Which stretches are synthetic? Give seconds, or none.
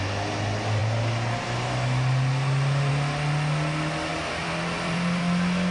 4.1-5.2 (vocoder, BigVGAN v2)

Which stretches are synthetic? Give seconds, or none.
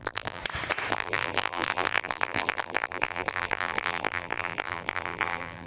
0.0-0.4 (vocoder, BigVGAN v2); 0.9-5.7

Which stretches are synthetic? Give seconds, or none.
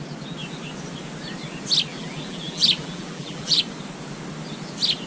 1.9-3.6 (vocoder, BigVGAN v2)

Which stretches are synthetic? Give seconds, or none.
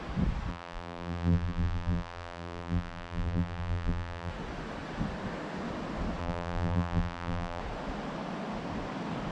0.5-4.3 (vocoder, BigVGAN v2); 6.2-7.6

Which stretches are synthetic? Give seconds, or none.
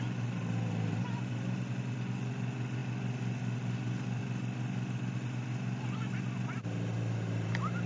none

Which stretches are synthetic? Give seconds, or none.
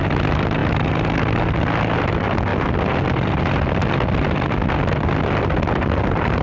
none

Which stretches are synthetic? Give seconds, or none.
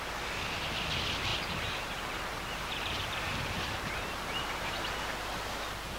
1.3-4.9 (vocoder, BigVGAN v2)